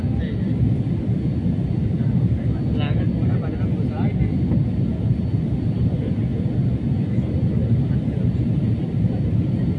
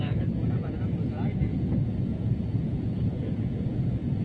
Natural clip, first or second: first